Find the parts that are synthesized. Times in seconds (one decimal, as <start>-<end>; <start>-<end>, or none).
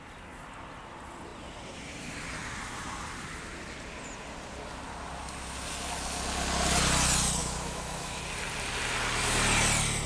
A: 7.4-8.2